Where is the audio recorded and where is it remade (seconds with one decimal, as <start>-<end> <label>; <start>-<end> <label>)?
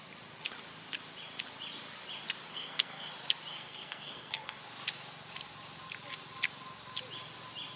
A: 0.0-2.5 recorded; 2.5-3.1 remade; 3.1-3.5 recorded; 3.5-4.6 remade; 4.6-7.8 recorded